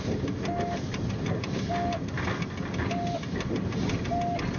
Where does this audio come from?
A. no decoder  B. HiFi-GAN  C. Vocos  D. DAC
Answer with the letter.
A